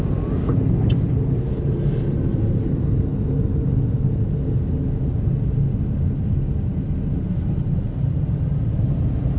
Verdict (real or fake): real